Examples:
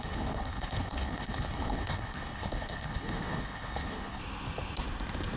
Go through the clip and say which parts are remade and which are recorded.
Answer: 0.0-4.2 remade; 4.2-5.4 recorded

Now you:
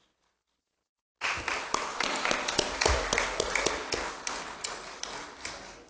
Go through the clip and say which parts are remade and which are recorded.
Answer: 0.0-1.1 remade; 1.1-4.1 recorded; 4.1-5.9 remade

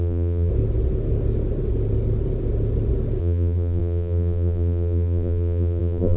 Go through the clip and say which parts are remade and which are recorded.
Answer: 0.0-0.5 remade; 0.5-3.2 recorded; 3.2-6.2 remade

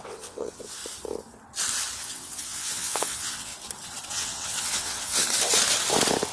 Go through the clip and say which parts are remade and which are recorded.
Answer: 0.0-0.8 remade; 0.8-2.0 recorded; 2.0-3.5 remade; 3.5-4.1 recorded; 4.1-5.2 remade; 5.2-6.3 recorded